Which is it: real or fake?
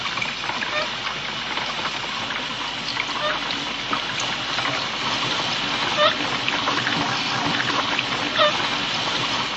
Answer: real